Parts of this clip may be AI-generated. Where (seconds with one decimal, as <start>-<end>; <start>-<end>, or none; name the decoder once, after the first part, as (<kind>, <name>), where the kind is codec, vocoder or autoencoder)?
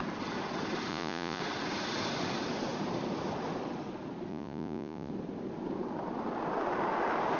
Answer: 0.9-1.4 (vocoder, Vocos); 4.3-5.1